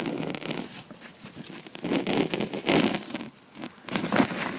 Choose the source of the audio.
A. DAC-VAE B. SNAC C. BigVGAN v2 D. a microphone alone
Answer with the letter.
D